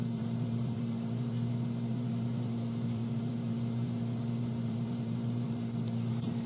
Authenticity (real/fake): fake